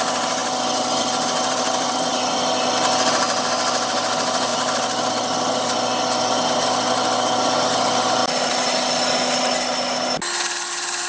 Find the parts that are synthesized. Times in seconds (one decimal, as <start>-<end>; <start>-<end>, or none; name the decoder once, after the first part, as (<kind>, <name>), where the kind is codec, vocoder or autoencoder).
0.4-2.6 (vocoder, BigVGAN v2)